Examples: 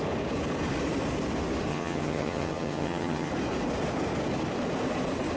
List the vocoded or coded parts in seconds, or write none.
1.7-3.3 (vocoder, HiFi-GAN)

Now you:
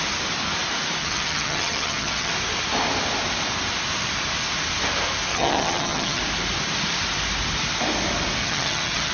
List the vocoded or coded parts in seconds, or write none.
1.0-2.3 (vocoder, HiFi-GAN); 5.3-6.2; 8.4-9.1

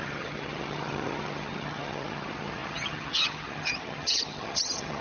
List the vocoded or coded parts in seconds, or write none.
0.0-5.0 (vocoder, HiFi-GAN)

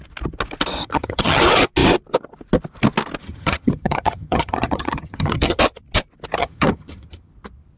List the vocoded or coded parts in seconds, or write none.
0.8-1.4 (vocoder, HiFi-GAN); 3.2-5.6; 6.4-7.3

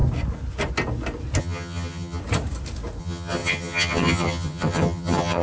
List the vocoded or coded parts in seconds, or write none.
1.4-2.2 (vocoder, HiFi-GAN); 3.0-5.4